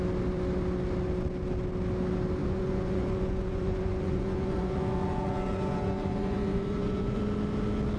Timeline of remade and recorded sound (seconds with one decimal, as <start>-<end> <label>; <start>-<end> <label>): 0.0-2.4 recorded; 2.4-7.2 remade; 7.2-8.0 recorded